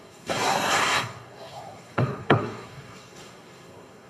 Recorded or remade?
remade